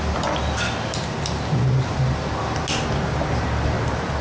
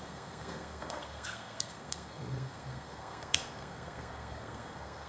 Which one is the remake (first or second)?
second